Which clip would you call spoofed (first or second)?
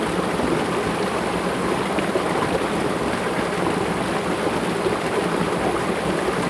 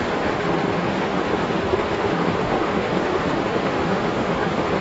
second